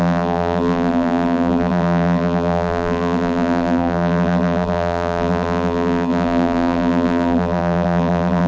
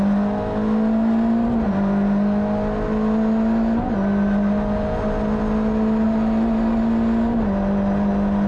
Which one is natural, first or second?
second